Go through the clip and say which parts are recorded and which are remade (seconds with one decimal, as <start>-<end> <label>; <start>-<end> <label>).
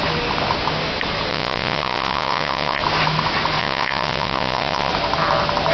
0.0-1.3 recorded; 1.3-2.8 remade; 2.8-3.6 recorded; 3.6-4.9 remade; 4.9-5.7 recorded